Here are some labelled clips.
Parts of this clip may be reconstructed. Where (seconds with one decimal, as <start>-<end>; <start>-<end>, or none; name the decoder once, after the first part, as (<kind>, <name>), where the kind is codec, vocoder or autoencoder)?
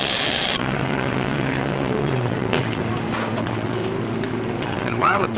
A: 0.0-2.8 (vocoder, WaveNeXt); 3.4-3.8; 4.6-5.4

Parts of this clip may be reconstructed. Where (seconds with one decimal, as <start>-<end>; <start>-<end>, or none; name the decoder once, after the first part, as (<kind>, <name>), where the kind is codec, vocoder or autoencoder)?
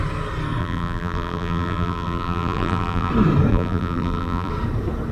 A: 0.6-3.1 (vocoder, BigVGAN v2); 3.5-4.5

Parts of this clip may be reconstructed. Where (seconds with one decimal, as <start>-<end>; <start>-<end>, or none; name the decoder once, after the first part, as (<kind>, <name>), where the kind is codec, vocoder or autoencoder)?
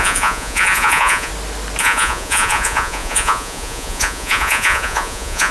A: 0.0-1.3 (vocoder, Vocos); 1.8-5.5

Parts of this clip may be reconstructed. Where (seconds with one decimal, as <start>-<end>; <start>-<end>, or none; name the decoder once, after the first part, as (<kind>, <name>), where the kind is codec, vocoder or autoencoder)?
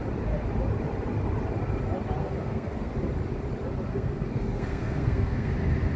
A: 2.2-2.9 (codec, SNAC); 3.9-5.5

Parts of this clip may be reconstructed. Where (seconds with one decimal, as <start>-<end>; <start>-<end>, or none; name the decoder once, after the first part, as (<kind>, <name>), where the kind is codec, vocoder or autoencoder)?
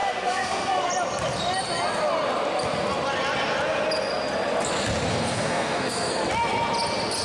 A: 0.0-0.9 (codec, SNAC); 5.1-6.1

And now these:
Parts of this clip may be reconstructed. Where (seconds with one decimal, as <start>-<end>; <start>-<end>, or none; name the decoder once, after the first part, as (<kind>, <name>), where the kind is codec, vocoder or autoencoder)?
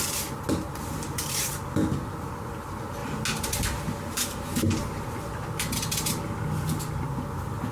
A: none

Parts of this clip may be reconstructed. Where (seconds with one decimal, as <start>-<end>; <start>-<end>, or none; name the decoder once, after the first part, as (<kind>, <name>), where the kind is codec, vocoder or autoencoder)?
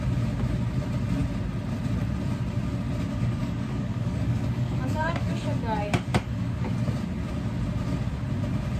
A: 3.1-5.3 (codec, DAC); 6.1-6.7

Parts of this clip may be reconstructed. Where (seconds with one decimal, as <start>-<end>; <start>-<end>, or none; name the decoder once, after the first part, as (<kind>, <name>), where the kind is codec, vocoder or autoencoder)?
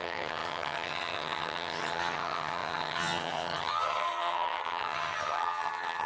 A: 0.0-6.1 (vocoder, HiFi-GAN)